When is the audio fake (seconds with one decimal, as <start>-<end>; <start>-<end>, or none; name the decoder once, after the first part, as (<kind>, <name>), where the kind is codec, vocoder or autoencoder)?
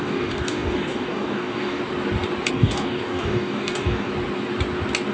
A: 0.0-1.8 (codec, DAC); 2.5-4.1